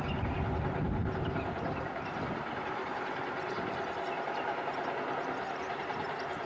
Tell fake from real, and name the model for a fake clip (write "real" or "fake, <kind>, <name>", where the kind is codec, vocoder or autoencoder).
real